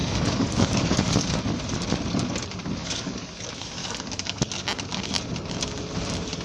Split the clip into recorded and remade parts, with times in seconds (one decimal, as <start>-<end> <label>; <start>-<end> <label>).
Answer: 0.0-1.4 remade; 1.4-2.8 recorded; 2.8-3.4 remade; 3.4-3.8 recorded; 3.8-4.4 remade; 4.4-6.4 recorded